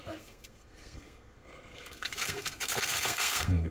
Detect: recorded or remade remade